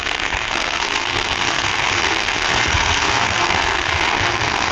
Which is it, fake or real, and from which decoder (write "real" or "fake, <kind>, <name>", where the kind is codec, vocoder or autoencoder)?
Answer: fake, codec, SNAC